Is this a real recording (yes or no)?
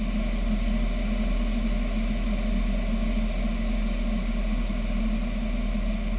yes